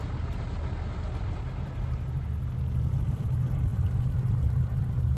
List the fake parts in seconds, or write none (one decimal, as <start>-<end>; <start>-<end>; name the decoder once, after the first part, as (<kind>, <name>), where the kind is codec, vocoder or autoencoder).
none